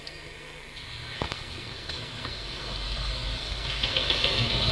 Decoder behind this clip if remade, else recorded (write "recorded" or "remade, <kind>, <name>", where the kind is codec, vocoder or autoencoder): remade, codec, SNAC